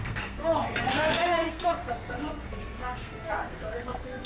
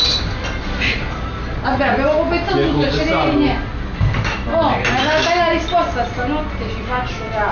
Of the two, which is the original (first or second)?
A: second